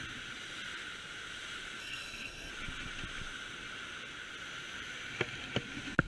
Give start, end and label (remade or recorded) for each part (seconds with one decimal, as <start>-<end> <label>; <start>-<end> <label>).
0.0-1.8 recorded; 1.8-2.5 remade; 2.5-6.1 recorded